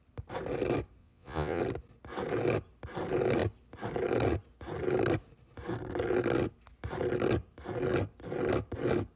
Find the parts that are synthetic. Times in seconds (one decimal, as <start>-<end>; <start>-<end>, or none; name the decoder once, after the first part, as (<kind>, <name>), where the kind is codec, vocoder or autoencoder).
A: 1.0-1.6 (vocoder, Vocos)